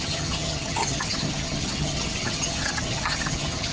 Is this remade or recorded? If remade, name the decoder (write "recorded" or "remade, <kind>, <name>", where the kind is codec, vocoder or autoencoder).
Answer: remade, vocoder, HiFi-GAN